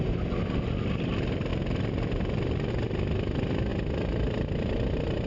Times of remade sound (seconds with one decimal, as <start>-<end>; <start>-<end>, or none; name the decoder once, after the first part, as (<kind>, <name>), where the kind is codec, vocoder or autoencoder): none